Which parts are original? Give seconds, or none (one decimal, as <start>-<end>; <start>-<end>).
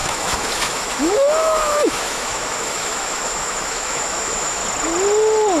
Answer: 4.6-5.6